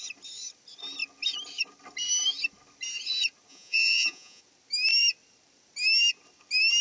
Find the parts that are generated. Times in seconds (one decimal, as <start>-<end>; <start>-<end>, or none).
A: 3.5-4.4

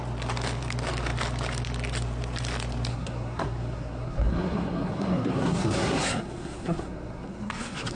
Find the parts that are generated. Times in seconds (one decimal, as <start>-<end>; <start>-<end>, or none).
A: 2.9-8.0

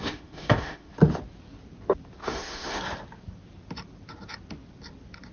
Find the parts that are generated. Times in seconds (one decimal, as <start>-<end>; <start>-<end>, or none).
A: 0.0-0.9; 2.2-2.8

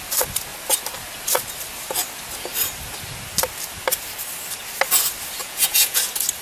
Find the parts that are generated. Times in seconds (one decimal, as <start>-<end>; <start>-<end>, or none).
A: 5.4-6.0